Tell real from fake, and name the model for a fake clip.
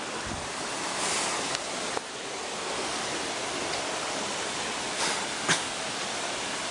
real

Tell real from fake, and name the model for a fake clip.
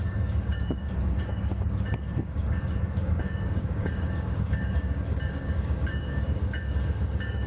fake, codec, DAC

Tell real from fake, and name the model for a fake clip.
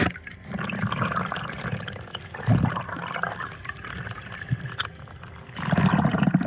real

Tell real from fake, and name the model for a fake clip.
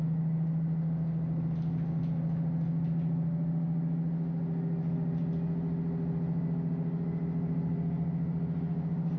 real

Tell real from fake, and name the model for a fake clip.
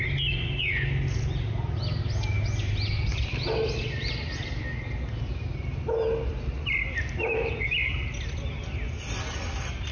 real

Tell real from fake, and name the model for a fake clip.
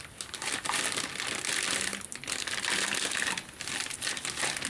real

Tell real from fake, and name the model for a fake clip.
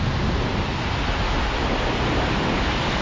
real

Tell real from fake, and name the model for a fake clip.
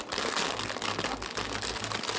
real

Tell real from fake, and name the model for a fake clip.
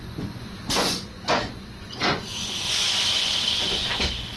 fake, vocoder, Vocos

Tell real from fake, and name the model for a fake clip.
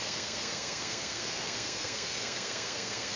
fake, codec, SNAC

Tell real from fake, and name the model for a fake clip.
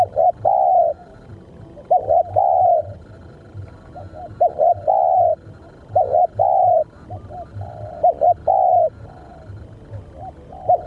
real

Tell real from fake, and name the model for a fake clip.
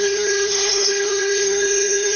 fake, codec, SNAC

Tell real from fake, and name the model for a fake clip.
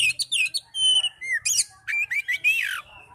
real